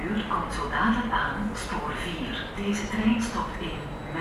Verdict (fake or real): real